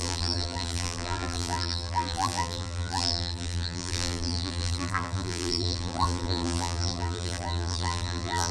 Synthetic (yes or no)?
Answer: yes